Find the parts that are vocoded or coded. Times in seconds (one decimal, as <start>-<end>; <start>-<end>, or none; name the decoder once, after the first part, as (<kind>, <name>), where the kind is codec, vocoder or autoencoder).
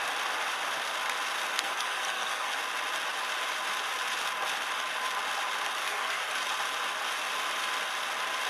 1.5-2.6 (codec, SNAC); 5.8-6.3